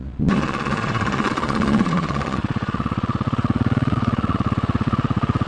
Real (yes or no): no